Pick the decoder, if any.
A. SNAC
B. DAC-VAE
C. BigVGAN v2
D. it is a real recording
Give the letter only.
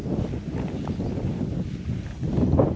D